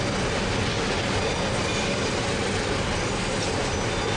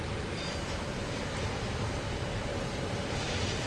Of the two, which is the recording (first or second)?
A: first